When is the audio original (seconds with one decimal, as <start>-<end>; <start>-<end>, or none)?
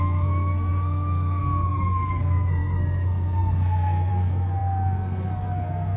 none